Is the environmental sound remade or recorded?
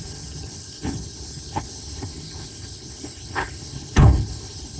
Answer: remade